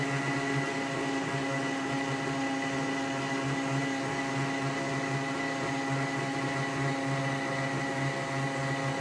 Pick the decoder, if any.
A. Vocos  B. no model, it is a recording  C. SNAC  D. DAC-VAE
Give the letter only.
B